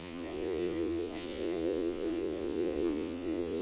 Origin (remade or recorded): remade